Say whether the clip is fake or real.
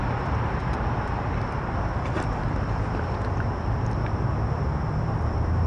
real